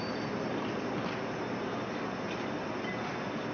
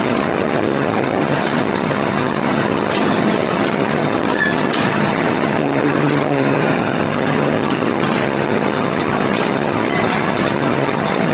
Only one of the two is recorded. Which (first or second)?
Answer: first